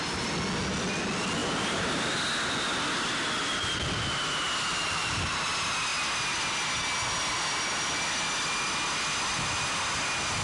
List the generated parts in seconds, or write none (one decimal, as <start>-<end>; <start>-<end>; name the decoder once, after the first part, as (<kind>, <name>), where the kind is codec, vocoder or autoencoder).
1.4-2.2 (vocoder, BigVGAN v2); 4.7-5.5